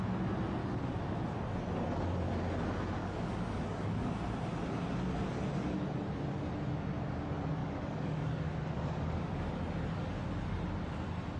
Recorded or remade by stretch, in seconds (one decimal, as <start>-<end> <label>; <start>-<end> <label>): 0.0-0.6 recorded; 0.6-1.2 remade; 1.2-3.0 recorded; 3.0-4.1 remade; 4.1-7.6 recorded; 7.6-9.5 remade; 9.5-11.4 recorded